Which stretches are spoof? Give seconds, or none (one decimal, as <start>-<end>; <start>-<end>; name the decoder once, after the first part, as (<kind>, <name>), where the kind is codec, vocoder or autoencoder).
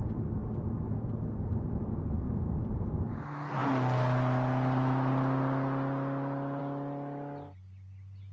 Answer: none